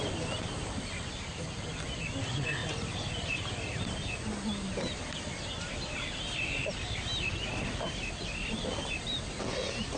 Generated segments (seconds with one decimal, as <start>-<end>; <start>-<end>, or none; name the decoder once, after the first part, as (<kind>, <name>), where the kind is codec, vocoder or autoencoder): none